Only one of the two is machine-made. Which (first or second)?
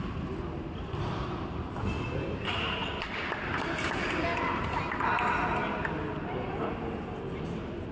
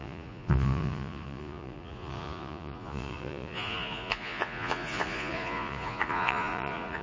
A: second